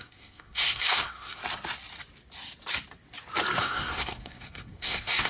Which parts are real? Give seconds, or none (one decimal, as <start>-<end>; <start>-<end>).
1.4-3.6